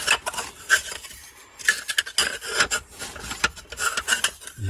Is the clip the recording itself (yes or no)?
yes